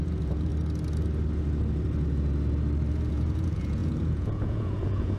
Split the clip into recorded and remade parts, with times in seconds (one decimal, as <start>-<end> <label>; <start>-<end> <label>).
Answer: 0.0-0.5 remade; 0.5-3.1 recorded; 3.1-5.2 remade